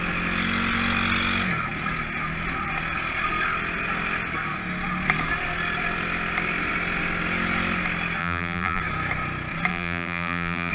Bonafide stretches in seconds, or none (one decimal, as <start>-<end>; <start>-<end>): 0.0-8.2; 8.8-9.7